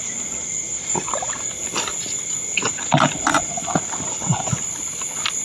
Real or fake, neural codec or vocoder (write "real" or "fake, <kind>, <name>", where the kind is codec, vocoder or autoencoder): real